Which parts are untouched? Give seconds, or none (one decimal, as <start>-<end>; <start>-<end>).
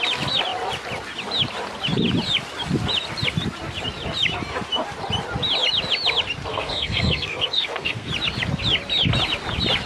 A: 0.0-6.5; 8.1-9.9